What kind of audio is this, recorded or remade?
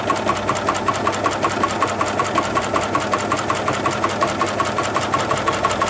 recorded